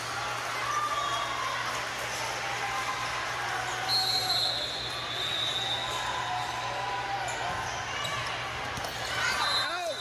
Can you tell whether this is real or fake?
real